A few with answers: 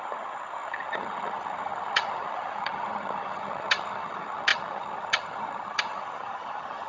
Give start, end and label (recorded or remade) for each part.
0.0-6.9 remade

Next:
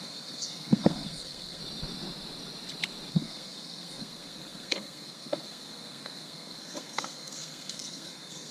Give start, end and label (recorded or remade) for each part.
0.0-1.6 remade; 1.6-3.1 recorded; 3.1-8.5 remade

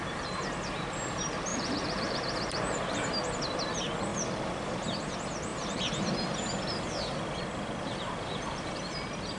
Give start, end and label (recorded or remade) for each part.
0.0-1.5 recorded; 1.5-3.2 remade; 3.2-4.1 recorded; 4.1-5.1 remade; 5.1-5.5 recorded; 5.5-6.0 remade; 6.0-9.4 recorded

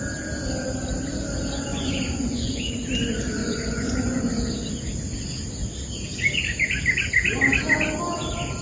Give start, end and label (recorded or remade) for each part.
0.0-1.7 recorded; 1.7-2.6 remade; 2.6-3.4 recorded; 3.4-4.3 remade; 4.3-8.6 recorded

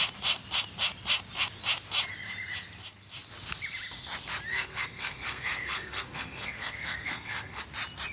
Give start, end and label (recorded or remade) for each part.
0.0-4.5 recorded; 4.5-7.6 remade; 7.6-8.1 recorded

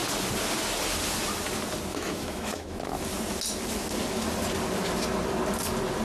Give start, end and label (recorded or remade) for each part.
0.0-1.9 recorded; 1.9-3.0 remade; 3.0-6.0 recorded